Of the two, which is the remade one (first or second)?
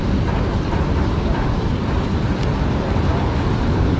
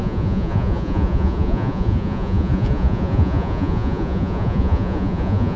second